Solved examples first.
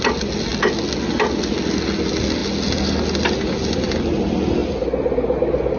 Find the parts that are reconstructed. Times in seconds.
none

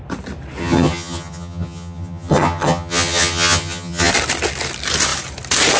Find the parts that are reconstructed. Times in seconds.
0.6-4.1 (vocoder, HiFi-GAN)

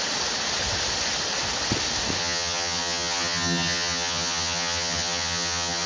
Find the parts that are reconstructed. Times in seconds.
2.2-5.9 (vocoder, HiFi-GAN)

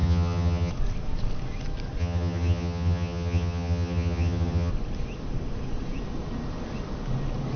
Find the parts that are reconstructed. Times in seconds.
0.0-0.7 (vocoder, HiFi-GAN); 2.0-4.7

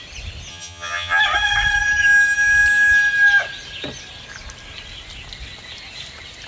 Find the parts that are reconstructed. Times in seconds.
0.5-1.2 (vocoder, HiFi-GAN)